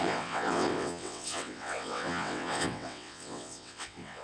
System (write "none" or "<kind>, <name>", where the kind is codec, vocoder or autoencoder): vocoder, WaveNeXt